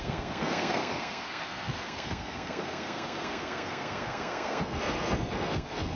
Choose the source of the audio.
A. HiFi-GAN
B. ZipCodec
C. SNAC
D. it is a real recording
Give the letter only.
C